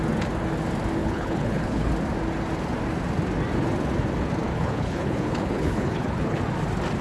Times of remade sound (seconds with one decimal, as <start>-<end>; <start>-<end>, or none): 1.0-1.9; 4.5-6.4